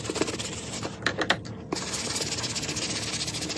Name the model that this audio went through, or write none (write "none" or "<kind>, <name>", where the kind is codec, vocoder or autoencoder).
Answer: none